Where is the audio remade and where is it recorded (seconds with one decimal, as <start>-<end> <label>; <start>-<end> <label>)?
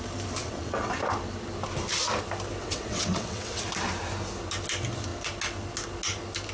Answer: 0.0-0.4 recorded; 0.4-0.9 remade; 0.9-2.6 recorded; 2.6-3.6 remade; 3.6-6.5 recorded